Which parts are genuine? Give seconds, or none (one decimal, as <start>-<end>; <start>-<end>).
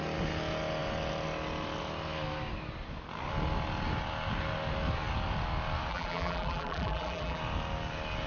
0.0-5.9; 7.4-8.3